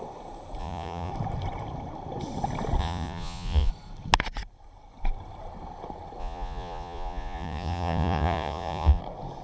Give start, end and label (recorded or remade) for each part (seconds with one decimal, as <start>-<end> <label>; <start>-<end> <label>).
0.0-0.6 recorded; 0.6-1.1 remade; 1.1-2.8 recorded; 2.8-3.7 remade; 3.7-6.2 recorded; 6.2-9.0 remade; 9.0-9.4 recorded